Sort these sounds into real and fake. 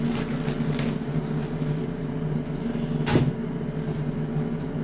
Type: real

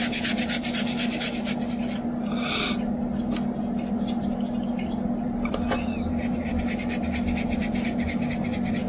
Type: real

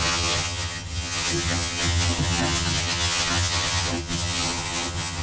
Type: fake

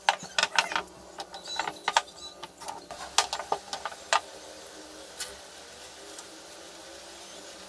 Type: real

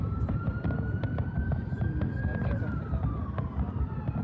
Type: fake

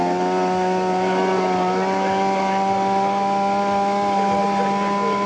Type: real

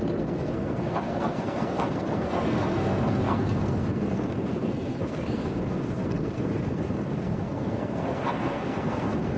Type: fake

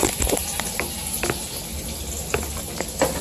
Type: real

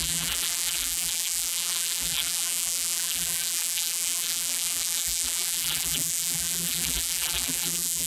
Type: fake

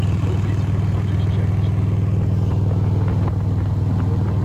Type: real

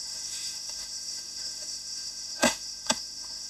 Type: fake